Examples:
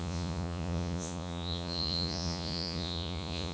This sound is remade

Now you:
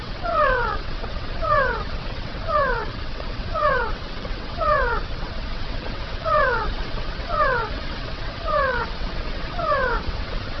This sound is remade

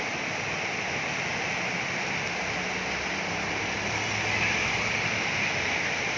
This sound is recorded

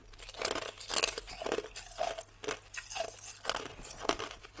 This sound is recorded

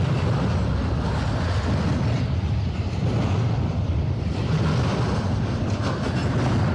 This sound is recorded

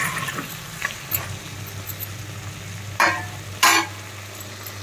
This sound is recorded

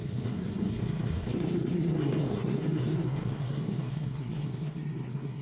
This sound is remade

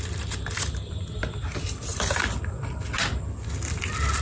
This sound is remade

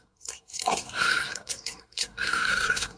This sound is remade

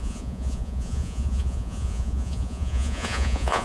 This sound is remade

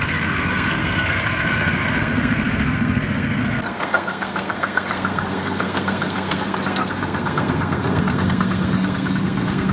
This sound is remade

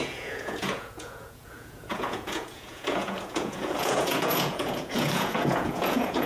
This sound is remade